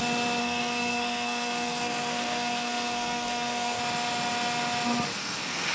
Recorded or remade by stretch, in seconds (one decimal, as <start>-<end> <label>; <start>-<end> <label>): 0.0-0.4 recorded; 0.4-3.8 remade; 3.8-5.2 recorded; 5.2-5.7 remade